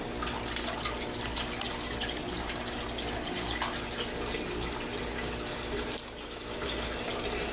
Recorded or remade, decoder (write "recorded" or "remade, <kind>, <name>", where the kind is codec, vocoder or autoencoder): recorded